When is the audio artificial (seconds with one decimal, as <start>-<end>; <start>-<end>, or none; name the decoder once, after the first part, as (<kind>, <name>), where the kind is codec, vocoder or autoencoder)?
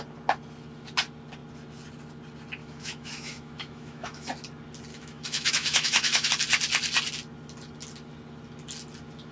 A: 2.6-4.3 (autoencoder, DAC-VAE); 4.9-6.3